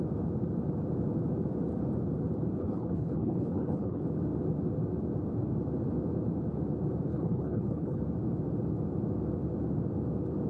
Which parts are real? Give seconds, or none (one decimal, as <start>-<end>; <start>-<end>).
0.0-2.6; 4.0-7.1; 8.0-10.5